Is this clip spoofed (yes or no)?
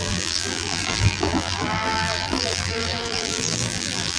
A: yes